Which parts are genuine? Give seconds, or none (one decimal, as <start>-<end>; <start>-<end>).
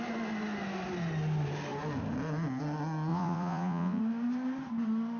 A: 0.0-3.1; 4.0-5.2